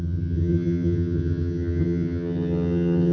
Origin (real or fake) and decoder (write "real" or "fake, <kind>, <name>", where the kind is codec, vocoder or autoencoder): fake, vocoder, HiFi-GAN